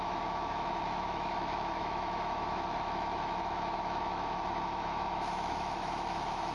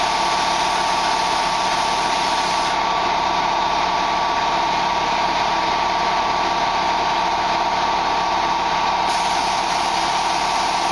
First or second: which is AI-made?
first